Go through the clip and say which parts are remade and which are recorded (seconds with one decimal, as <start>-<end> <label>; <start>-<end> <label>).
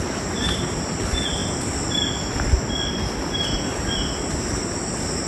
0.0-5.3 recorded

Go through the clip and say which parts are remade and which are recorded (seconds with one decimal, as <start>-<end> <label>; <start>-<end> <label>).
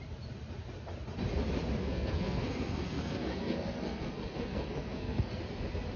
0.0-1.8 recorded; 1.8-5.4 remade; 5.4-6.0 recorded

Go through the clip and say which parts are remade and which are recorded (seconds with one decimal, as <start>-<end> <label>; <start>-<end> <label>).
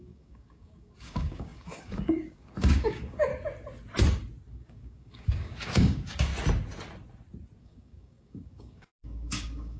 0.0-3.3 remade; 3.3-4.5 recorded; 4.5-6.3 remade; 6.3-7.6 recorded; 7.6-9.8 remade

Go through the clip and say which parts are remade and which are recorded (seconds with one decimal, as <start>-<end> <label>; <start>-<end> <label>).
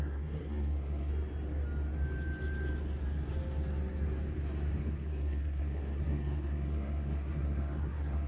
0.0-1.1 remade; 1.1-4.8 recorded; 4.8-8.3 remade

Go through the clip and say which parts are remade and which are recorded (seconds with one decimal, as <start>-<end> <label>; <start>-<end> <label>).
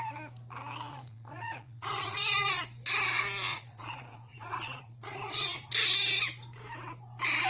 0.0-0.9 recorded; 0.9-2.6 remade; 2.6-3.5 recorded; 3.5-5.7 remade; 5.7-7.5 recorded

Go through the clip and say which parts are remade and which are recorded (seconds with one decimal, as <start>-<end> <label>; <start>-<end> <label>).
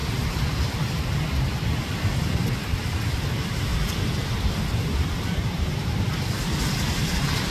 0.0-3.7 recorded; 3.7-6.6 remade; 6.6-7.5 recorded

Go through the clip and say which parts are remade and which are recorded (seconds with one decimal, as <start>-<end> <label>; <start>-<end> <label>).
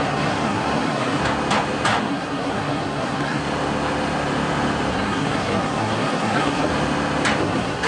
0.0-1.2 remade; 1.2-2.0 recorded; 2.0-3.4 remade; 3.4-4.9 recorded; 4.9-6.7 remade; 6.7-7.4 recorded; 7.4-7.9 remade